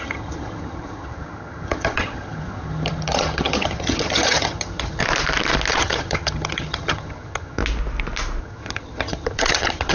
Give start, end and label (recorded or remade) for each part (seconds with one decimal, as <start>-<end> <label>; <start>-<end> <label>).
0.0-5.0 remade; 5.0-5.7 recorded; 5.7-7.6 remade; 7.6-8.4 recorded; 8.4-9.9 remade